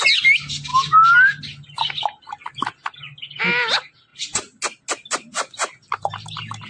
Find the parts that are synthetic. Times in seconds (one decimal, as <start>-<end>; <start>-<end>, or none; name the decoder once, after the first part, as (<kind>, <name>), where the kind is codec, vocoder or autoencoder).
none

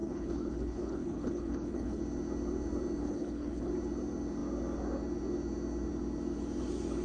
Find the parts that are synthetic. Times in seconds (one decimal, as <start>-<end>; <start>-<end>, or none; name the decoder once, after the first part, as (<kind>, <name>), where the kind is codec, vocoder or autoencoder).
0.0-2.0 (codec, HILCodec); 3.0-3.7